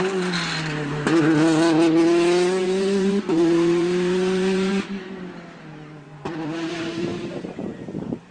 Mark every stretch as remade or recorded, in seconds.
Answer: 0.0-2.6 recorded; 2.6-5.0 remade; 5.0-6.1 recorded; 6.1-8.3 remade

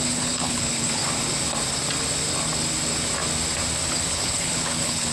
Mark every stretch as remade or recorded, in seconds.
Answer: 0.0-1.0 remade; 1.0-4.1 recorded; 4.1-5.1 remade

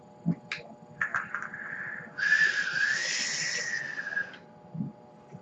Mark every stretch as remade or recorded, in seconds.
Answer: 0.0-5.4 recorded

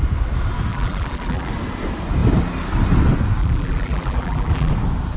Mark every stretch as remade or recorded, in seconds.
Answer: 0.0-0.7 recorded; 0.7-1.5 remade; 1.5-3.4 recorded; 3.4-4.7 remade; 4.7-5.2 recorded

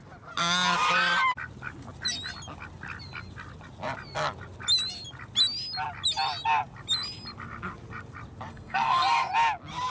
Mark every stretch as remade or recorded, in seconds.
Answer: 0.0-8.5 recorded; 8.5-9.3 remade; 9.3-9.9 recorded

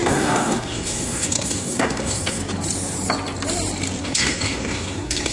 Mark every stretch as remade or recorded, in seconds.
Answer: 0.0-2.4 remade; 2.4-4.0 recorded; 4.0-5.3 remade

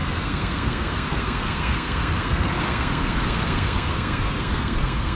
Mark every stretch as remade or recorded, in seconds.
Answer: 0.0-5.2 remade

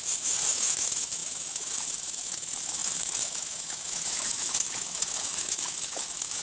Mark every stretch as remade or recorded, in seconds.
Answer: 0.0-6.4 remade